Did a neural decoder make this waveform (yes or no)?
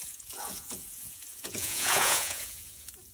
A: yes